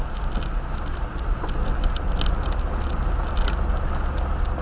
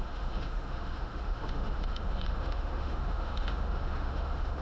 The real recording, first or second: first